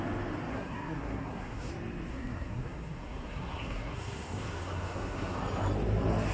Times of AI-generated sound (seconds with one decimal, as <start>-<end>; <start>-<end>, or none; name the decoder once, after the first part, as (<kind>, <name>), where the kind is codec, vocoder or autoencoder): 0.5-1.7 (codec, SNAC); 2.1-5.4

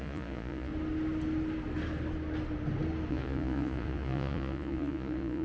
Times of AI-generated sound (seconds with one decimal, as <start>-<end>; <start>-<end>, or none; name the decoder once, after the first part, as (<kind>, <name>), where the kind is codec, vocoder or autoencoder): 0.0-0.7 (vocoder, Vocos); 3.1-5.4

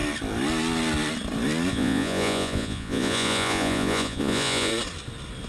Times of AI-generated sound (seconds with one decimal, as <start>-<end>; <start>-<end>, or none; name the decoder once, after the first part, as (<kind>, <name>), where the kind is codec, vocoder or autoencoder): 1.7-4.7 (vocoder, Vocos)

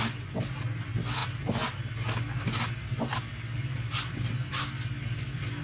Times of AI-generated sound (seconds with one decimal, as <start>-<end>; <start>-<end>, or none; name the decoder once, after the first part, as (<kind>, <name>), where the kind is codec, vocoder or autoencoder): none

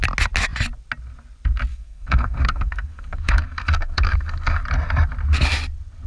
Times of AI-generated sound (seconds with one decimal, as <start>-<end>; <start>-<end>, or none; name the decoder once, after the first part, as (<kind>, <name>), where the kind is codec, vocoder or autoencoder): 1.7-4.6 (codec, SNAC)

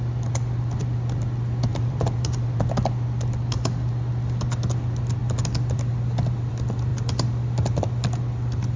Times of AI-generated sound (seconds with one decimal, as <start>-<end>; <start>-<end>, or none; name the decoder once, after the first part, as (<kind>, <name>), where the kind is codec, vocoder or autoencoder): 1.7-2.6 (vocoder, BigVGAN v2)